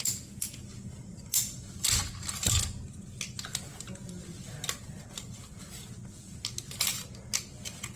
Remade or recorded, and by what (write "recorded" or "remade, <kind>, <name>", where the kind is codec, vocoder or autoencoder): recorded